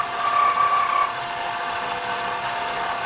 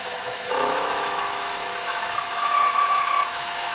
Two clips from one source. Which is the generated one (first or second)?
second